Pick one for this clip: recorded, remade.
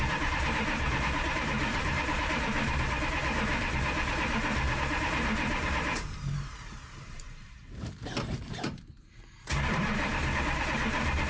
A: remade